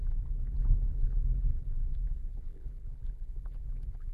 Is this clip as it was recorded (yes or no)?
no